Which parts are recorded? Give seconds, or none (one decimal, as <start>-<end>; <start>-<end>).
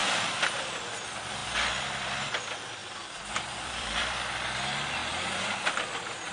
0.8-2.8; 4.0-5.0